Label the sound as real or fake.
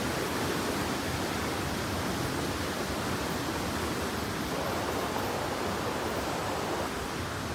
real